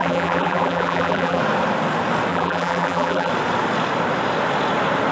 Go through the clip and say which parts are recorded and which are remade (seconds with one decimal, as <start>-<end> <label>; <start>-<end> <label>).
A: 0.0-1.4 remade; 1.4-2.3 recorded; 2.3-3.3 remade; 3.3-5.1 recorded